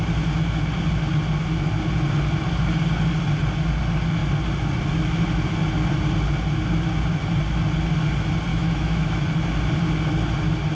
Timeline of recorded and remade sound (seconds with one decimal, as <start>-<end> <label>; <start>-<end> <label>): 0.0-8.5 recorded; 8.5-9.3 remade; 9.3-10.7 recorded